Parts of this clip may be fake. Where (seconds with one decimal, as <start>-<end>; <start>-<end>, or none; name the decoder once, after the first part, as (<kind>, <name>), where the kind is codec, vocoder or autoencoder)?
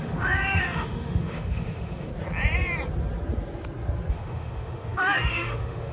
0.0-2.1 (autoencoder, DAC-VAE); 4.1-5.9